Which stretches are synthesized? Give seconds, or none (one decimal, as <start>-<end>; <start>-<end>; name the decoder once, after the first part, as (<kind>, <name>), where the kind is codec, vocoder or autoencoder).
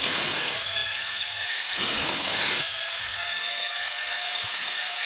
0.0-5.1 (codec, SNAC)